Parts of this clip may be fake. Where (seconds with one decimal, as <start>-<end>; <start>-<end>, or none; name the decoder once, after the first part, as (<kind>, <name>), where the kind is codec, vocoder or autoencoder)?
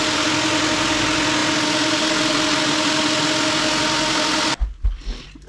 none